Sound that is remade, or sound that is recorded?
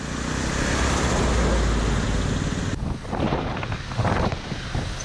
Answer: recorded